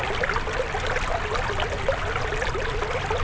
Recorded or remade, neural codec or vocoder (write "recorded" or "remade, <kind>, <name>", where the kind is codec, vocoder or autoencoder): recorded